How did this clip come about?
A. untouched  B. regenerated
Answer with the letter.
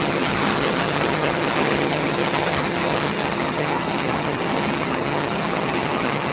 B